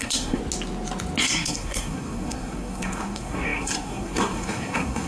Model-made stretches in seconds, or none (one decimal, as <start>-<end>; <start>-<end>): 0.0-0.4; 1.2-5.1